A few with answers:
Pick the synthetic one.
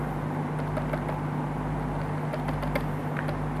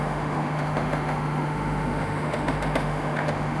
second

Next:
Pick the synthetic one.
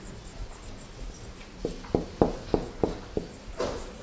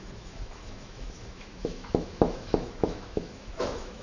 second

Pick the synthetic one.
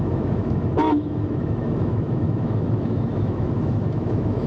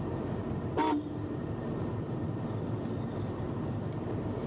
first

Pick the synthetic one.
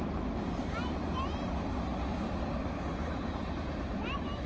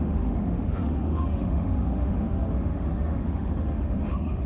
second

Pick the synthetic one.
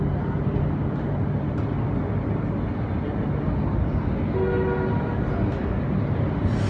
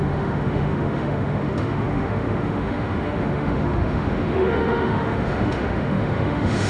second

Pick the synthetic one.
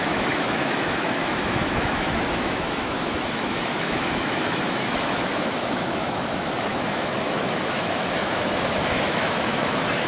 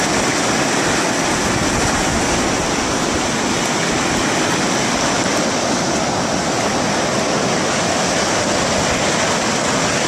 first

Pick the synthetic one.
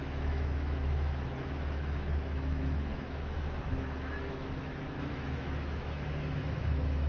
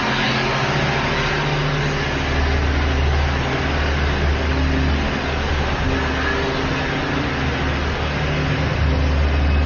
first